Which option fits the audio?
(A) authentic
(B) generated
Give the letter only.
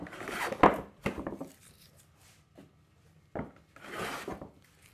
A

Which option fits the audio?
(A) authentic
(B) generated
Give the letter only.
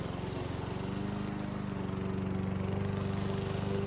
A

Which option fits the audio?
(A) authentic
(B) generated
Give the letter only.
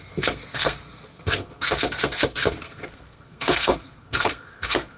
B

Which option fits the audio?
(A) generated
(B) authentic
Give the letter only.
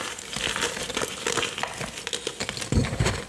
B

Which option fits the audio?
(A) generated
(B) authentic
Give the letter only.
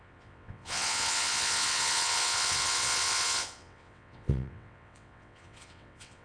A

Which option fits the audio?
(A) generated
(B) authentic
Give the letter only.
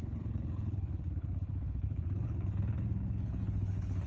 A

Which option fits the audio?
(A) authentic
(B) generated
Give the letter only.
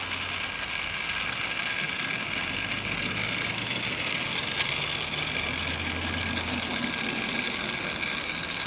A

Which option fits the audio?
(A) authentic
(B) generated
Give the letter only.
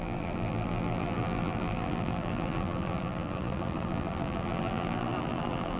B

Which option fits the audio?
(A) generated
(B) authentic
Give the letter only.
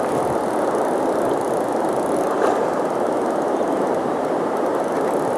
B